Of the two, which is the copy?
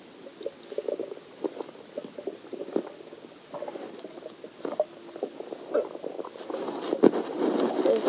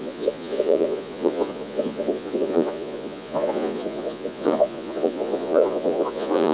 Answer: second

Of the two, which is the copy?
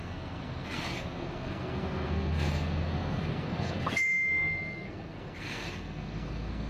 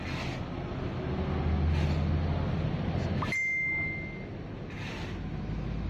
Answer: first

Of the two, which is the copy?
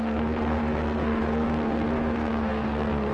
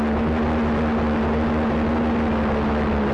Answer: first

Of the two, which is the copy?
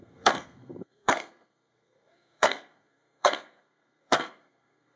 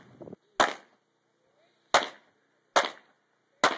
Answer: first